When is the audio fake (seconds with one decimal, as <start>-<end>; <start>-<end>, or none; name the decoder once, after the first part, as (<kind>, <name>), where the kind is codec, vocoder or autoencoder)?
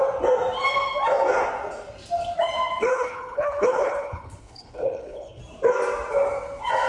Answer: 2.9-5.4 (codec, HILCodec)